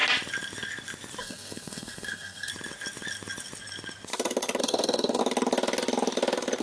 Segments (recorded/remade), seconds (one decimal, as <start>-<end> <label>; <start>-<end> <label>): 0.0-1.2 recorded; 1.2-2.5 remade; 2.5-4.6 recorded; 4.6-5.2 remade; 5.2-6.6 recorded